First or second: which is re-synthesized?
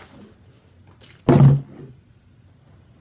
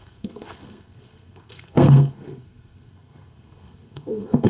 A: second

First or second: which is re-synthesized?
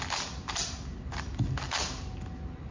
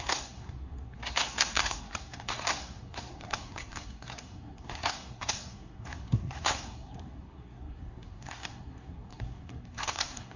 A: second